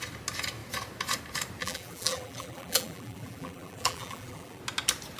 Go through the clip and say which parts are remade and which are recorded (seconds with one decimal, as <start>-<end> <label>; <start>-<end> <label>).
0.0-1.6 recorded; 1.6-4.6 remade; 4.6-5.2 recorded